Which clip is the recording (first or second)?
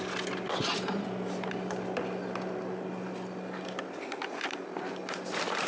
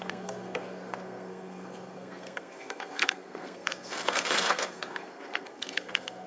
first